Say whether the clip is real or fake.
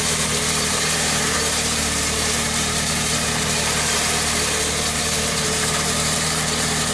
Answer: fake